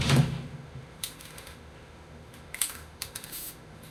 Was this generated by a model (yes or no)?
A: yes